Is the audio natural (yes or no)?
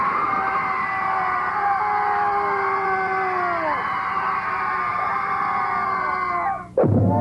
yes